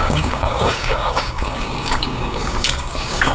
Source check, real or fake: fake